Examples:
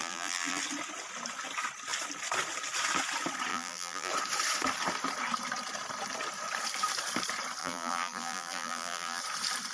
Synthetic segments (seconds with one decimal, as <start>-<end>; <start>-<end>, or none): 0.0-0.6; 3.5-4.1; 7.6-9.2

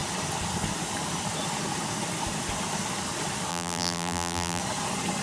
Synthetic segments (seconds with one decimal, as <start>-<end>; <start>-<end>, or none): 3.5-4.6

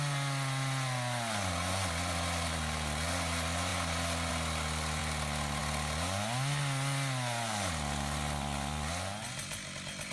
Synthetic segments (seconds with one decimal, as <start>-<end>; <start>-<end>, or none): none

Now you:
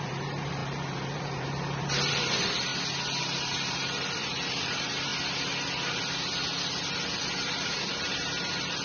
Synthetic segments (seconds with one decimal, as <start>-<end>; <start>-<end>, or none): 0.0-2.7; 3.2-5.1; 7.2-8.8